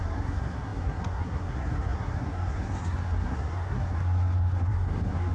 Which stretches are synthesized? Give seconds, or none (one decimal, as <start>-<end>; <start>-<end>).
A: 0.0-5.3